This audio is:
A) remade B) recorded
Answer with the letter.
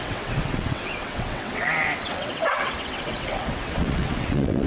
A